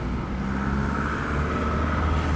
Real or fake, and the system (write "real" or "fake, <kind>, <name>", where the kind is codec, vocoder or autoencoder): real